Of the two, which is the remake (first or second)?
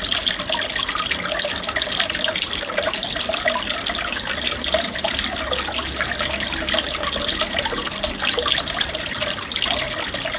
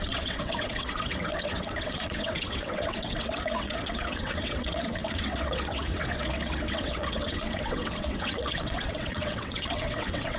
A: second